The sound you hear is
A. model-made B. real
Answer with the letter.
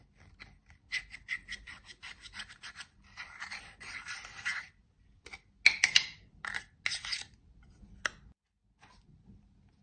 B